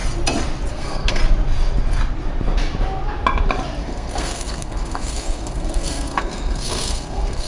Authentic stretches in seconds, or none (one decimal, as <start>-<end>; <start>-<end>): 0.0-0.7; 1.2-3.8